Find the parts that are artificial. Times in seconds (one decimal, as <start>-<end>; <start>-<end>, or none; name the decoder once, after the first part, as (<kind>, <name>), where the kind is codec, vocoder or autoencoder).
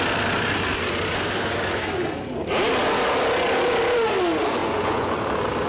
4.6-5.2 (vocoder, Vocos)